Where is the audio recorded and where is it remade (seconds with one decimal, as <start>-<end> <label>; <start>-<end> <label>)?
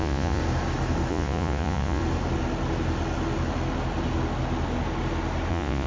0.0-0.4 remade; 0.4-1.1 recorded; 1.1-2.0 remade; 2.0-5.5 recorded; 5.5-5.9 remade